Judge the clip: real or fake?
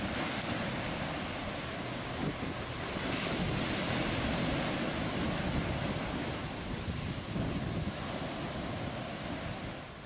real